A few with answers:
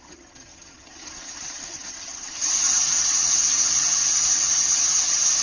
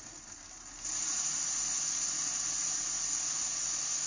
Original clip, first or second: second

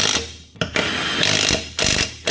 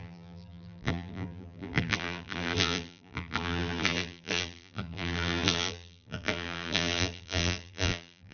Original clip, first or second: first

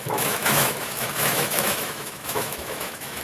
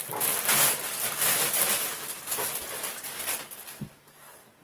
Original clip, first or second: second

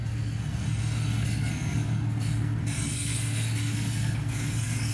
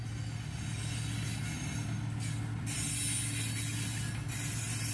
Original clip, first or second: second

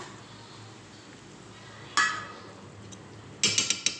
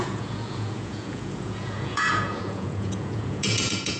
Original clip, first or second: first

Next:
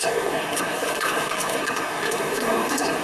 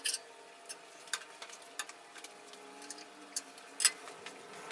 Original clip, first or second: second